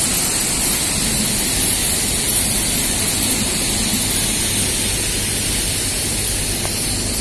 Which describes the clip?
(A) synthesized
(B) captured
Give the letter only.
B